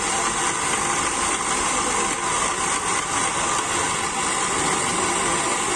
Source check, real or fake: real